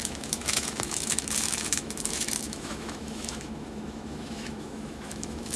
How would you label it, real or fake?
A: fake